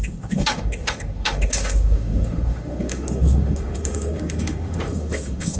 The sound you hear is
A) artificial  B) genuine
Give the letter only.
A